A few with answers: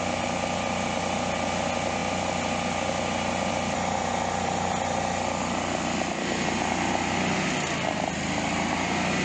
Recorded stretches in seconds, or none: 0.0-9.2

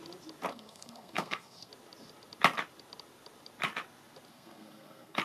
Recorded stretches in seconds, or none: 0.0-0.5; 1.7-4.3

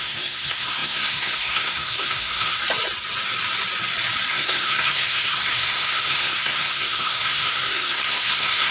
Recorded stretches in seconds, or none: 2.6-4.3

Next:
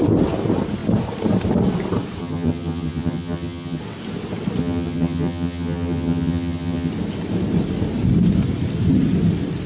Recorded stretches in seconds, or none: 0.0-2.2; 3.8-4.6; 6.9-9.7